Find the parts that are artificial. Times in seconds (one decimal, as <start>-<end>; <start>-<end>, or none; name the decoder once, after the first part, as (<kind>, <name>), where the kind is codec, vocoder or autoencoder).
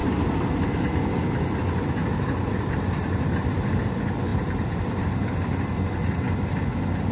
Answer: none